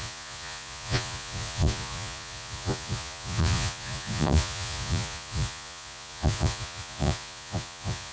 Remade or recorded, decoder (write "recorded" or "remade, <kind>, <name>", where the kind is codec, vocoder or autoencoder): remade, vocoder, Vocos